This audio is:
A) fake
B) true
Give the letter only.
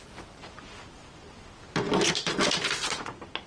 B